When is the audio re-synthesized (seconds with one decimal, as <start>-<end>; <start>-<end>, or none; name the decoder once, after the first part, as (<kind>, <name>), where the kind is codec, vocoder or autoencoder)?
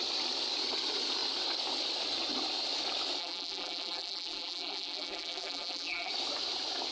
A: 3.2-6.1 (vocoder, BigVGAN v2)